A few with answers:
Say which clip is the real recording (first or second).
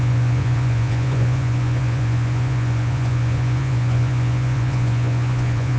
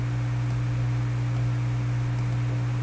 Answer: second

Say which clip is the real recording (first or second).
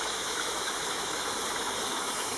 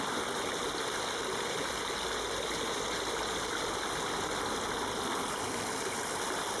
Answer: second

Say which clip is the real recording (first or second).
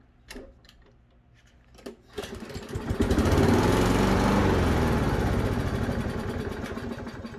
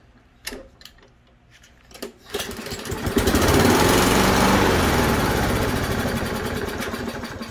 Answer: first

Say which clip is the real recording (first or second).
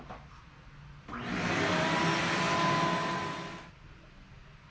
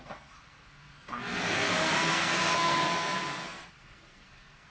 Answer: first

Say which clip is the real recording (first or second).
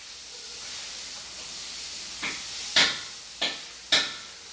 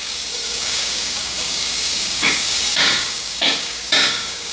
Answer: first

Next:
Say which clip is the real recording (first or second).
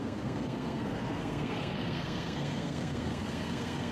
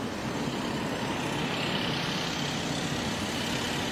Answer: second